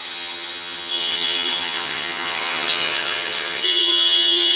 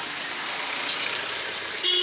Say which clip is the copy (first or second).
first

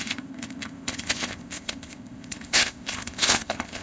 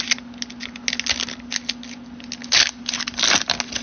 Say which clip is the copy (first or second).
first